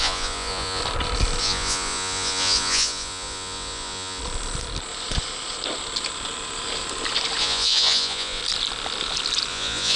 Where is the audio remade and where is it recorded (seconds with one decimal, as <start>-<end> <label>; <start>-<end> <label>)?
0.0-0.8 remade; 0.8-1.4 recorded; 1.4-4.2 remade; 4.2-7.4 recorded; 7.4-8.4 remade; 8.4-9.5 recorded; 9.5-10.0 remade